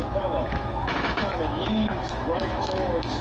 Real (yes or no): no